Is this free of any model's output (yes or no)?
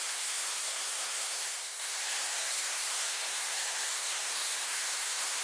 no